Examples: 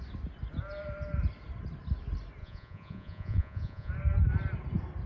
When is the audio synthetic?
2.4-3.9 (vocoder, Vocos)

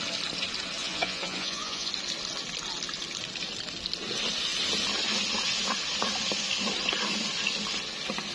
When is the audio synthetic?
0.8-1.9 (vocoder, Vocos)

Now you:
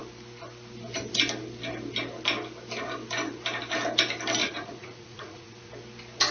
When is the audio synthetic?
4.4-5.7 (vocoder, Vocos)

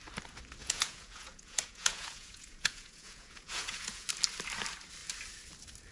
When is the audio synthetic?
0.6-4.1 (vocoder, Vocos)

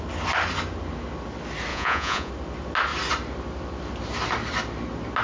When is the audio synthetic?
1.7-2.3 (vocoder, Vocos)